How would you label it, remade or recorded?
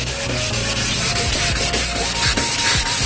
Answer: recorded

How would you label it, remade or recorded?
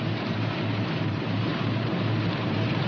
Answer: remade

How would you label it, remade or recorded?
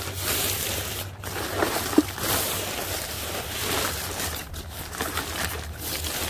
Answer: recorded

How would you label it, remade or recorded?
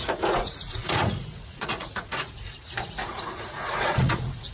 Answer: remade